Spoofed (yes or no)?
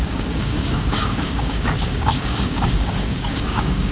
yes